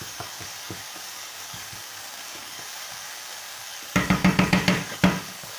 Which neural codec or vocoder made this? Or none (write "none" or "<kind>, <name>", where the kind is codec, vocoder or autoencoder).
codec, DAC